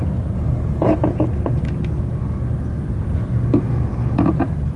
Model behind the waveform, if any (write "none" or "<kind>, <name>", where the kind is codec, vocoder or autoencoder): none